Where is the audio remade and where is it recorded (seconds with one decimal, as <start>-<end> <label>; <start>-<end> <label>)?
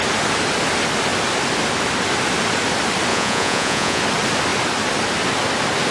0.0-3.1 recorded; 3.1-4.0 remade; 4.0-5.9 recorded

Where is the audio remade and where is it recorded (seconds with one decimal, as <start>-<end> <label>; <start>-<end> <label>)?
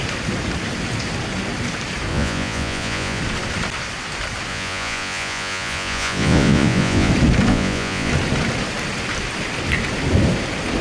0.0-2.1 recorded; 2.1-3.2 remade; 3.2-4.5 recorded; 4.5-7.1 remade; 7.1-7.5 recorded; 7.5-8.1 remade; 8.1-10.8 recorded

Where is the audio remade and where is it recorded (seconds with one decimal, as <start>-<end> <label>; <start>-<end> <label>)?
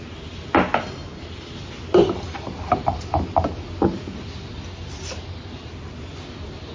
0.0-6.7 recorded